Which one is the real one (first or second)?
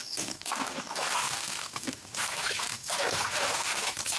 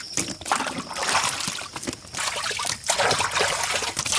second